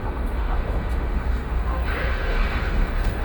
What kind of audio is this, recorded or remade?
remade